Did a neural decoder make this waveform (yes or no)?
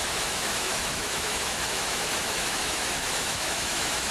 yes